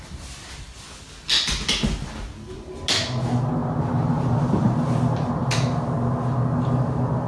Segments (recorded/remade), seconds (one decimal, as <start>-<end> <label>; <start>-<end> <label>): 0.0-3.6 recorded; 3.6-5.5 remade; 5.5-7.3 recorded